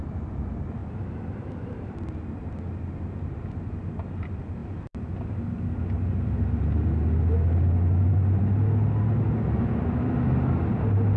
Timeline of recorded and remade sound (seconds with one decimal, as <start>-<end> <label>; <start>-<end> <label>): 0.0-0.8 recorded; 0.8-2.4 remade; 2.4-11.2 recorded